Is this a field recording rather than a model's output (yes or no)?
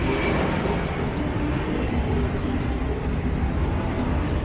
yes